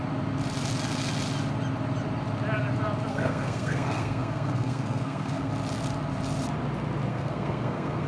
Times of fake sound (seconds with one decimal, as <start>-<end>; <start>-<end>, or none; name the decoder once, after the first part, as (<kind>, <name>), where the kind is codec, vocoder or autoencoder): 3.1-5.5 (codec, SNAC); 7.1-8.1